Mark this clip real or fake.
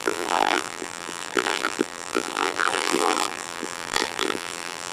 fake